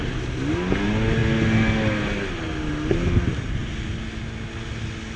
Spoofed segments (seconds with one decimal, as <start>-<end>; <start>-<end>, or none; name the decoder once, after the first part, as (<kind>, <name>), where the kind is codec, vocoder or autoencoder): none